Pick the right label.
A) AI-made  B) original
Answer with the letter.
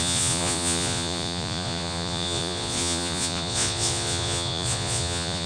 A